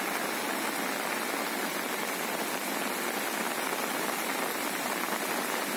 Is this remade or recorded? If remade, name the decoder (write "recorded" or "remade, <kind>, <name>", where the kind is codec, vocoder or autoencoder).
recorded